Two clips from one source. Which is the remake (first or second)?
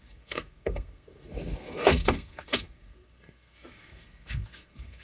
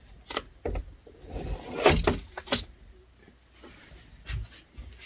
first